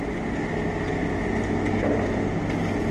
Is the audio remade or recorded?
recorded